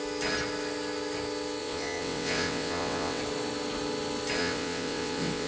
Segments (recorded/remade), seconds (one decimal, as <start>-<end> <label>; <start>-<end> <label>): 0.0-1.6 recorded; 1.6-3.2 remade; 3.2-4.4 recorded; 4.4-5.5 remade